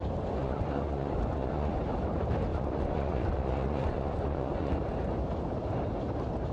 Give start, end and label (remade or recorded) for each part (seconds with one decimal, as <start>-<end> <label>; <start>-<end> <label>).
0.0-0.4 recorded; 0.4-1.8 remade; 1.8-2.5 recorded; 2.5-4.7 remade; 4.7-6.5 recorded

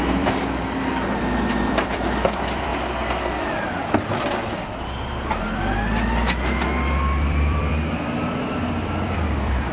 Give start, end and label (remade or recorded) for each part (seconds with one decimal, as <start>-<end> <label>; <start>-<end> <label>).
0.0-2.7 remade; 2.7-3.5 recorded; 3.5-4.6 remade; 4.6-7.2 recorded; 7.2-9.7 remade

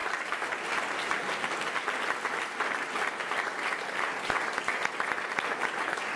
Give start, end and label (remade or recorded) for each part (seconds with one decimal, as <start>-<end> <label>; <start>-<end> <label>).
0.0-6.2 recorded

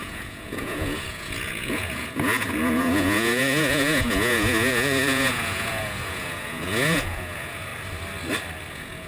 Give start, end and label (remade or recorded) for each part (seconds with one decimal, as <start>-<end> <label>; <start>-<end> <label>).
0.0-7.7 remade; 7.7-8.7 recorded; 8.7-9.1 remade

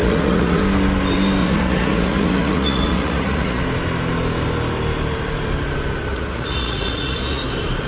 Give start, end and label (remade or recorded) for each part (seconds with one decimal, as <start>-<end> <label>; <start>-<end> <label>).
0.0-0.6 remade; 0.6-1.4 recorded; 1.4-3.6 remade; 3.6-6.1 recorded; 6.1-7.4 remade; 7.4-7.9 recorded

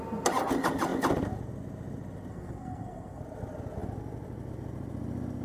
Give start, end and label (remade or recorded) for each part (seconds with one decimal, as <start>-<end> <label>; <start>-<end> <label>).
0.0-2.3 recorded; 2.3-3.2 remade; 3.2-5.4 recorded